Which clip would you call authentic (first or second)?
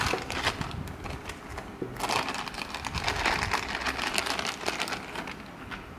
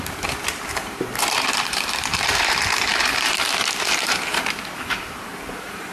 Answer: first